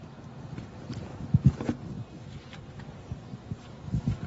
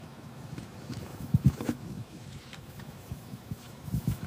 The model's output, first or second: second